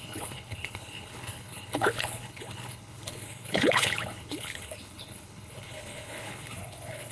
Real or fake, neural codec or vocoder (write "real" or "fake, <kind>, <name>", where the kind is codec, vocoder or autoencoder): fake, codec, HILCodec